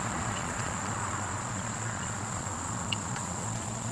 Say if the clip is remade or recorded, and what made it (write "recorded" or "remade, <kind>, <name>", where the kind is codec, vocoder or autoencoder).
remade, vocoder, Vocos